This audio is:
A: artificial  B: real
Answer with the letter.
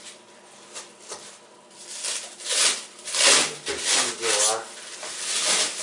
B